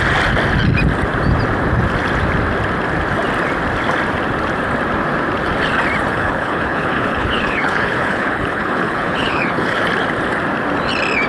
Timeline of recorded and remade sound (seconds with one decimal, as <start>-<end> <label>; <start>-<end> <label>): 0.0-6.1 recorded; 6.1-9.8 remade; 9.8-11.3 recorded